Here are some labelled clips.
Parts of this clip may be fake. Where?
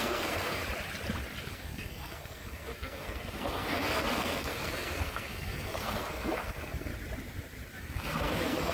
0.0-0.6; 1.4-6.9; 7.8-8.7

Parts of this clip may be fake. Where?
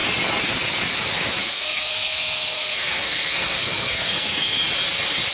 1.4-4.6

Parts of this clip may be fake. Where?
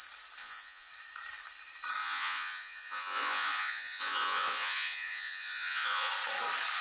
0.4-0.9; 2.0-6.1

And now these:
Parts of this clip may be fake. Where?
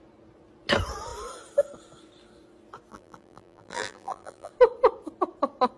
2.9-4.5